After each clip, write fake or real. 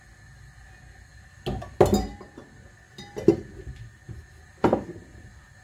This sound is real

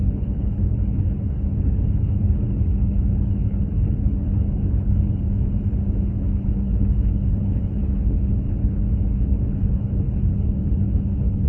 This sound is fake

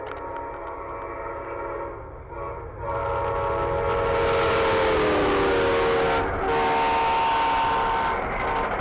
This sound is real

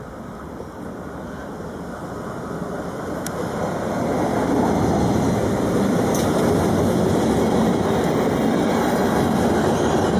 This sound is real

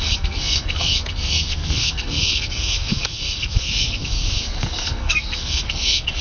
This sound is fake